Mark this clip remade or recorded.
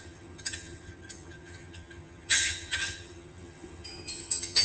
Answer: remade